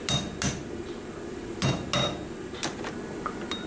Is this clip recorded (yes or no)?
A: yes